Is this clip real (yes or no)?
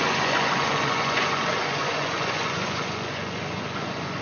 no